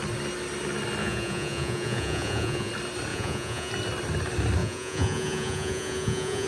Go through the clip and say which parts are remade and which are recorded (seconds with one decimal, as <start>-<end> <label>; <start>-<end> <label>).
0.0-1.0 recorded; 1.0-2.7 remade; 2.7-3.1 recorded; 3.1-3.7 remade; 3.7-4.6 recorded; 4.6-6.5 remade